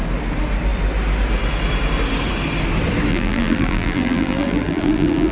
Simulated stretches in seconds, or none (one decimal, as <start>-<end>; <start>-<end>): 3.1-5.3